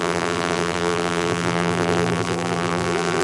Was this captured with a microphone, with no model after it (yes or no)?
no